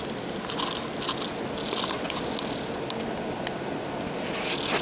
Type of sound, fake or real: real